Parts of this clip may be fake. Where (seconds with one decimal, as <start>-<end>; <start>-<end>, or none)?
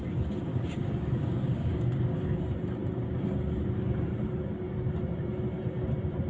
0.5-2.4